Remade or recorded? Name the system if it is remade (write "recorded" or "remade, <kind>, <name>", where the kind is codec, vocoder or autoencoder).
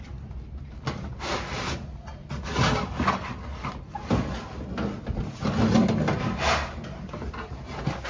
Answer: recorded